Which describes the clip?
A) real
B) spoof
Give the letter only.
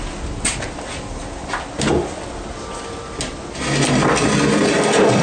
A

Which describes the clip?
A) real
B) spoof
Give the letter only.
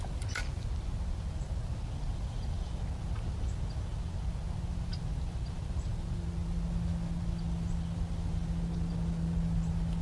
A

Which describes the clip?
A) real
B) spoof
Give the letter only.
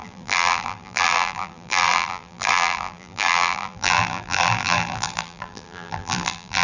B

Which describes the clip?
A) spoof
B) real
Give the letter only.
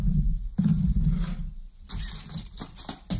B